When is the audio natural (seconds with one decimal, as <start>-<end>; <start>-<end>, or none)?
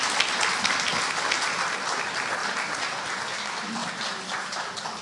0.9-1.5